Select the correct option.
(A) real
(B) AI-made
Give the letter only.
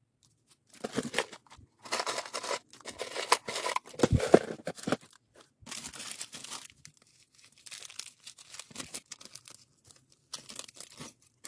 A